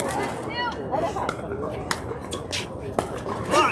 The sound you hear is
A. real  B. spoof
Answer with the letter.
A